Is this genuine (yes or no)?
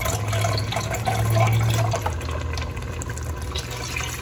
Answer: yes